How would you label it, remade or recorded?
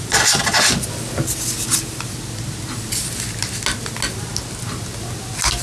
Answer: recorded